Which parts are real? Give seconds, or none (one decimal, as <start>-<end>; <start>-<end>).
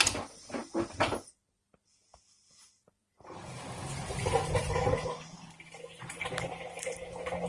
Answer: 0.0-4.2; 5.4-7.5